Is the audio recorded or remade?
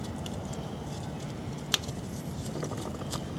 recorded